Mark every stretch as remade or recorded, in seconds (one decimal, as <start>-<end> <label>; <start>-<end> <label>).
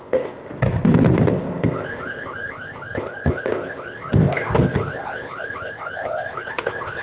0.0-0.5 remade; 0.5-1.3 recorded; 1.3-7.0 remade